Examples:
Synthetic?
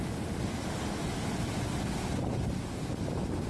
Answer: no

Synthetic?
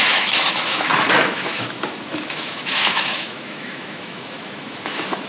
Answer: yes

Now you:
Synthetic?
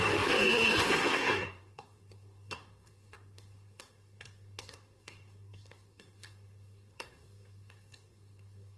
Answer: yes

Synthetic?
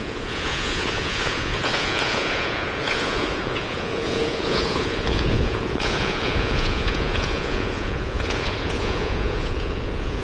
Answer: yes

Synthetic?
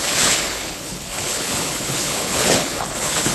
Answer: yes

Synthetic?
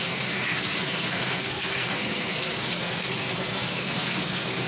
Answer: yes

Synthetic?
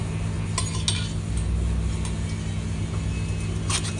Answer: no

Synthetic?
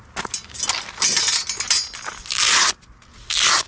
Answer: no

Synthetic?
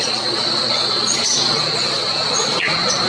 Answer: yes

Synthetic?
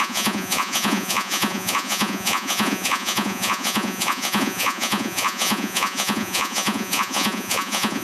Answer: yes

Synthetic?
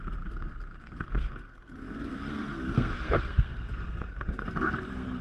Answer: yes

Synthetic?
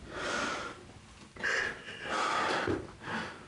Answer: no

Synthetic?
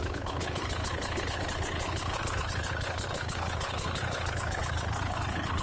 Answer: yes